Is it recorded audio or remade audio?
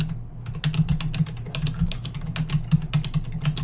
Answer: recorded